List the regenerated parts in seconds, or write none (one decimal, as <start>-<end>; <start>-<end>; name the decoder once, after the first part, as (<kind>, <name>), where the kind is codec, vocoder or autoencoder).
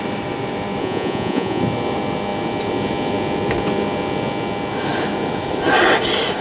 0.8-1.6 (vocoder, Vocos)